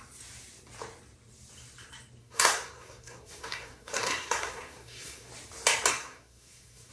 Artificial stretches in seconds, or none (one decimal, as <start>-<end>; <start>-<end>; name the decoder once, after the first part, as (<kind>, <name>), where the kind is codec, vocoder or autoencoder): 2.2-5.3 (codec, SNAC); 5.9-6.9